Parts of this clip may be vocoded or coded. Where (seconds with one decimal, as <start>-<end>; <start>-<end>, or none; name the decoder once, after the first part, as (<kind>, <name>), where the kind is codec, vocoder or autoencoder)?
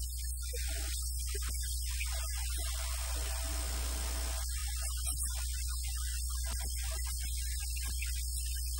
none